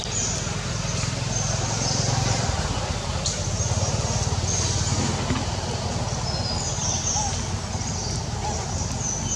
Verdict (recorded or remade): recorded